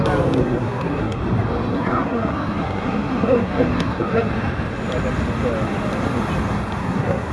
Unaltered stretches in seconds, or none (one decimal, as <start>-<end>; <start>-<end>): 0.0-0.4; 1.2-1.7; 4.3-6.8